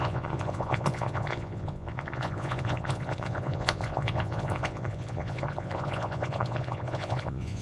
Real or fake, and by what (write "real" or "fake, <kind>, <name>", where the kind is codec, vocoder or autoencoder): fake, vocoder, Vocos